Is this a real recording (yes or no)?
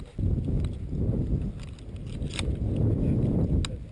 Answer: yes